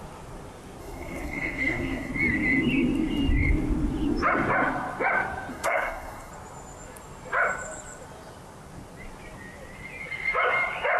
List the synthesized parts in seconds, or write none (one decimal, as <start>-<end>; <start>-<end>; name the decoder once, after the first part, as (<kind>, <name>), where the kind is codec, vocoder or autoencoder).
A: 0.8-2.1 (codec, SNAC); 5.5-6.3